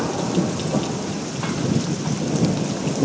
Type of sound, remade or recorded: recorded